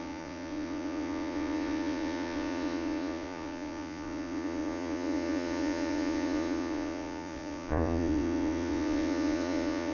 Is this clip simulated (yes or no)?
yes